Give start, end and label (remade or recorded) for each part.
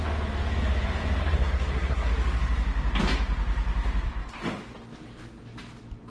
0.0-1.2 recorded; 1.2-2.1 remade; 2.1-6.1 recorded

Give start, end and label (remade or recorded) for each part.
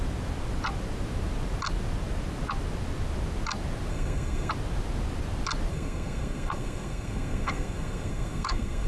0.0-3.9 recorded; 3.9-4.5 remade; 4.5-5.7 recorded; 5.7-8.9 remade